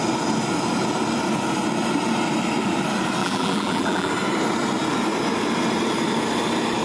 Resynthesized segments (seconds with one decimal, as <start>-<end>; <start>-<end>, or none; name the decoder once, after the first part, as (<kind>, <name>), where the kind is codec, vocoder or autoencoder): 3.2-4.1 (vocoder, BigVGAN v2)